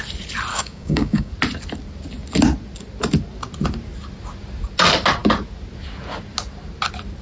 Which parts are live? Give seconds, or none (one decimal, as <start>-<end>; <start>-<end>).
0.0-0.5; 1.3-7.2